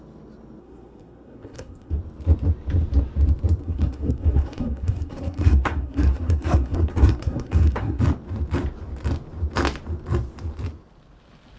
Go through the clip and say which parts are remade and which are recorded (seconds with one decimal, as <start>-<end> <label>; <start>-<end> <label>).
0.0-0.6 recorded; 0.6-2.0 remade; 2.0-3.6 recorded; 3.6-8.0 remade; 8.0-11.6 recorded